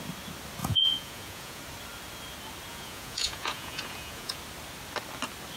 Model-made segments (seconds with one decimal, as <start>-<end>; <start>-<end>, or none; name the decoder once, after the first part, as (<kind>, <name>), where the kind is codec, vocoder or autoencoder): 0.6-1.6 (vocoder, Vocos); 2.7-4.4